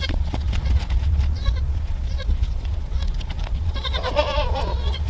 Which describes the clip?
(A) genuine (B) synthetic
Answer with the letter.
B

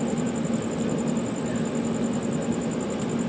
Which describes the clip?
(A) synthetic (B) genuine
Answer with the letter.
B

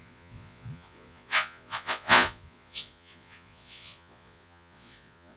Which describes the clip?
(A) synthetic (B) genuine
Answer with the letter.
A